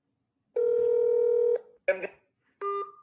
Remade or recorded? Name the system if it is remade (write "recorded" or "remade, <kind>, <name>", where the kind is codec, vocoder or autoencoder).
recorded